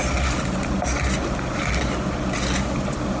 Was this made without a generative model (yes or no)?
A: yes